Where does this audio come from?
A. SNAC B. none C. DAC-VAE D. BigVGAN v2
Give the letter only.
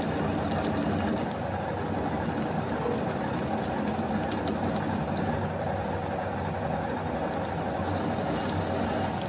B